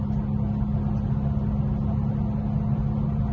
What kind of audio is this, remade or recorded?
recorded